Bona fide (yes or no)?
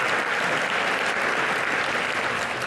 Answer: yes